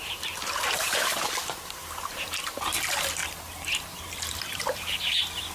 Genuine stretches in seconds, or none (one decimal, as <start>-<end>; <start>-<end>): 3.2-4.1